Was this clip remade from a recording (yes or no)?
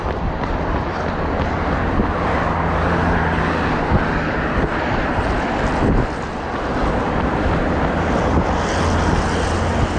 no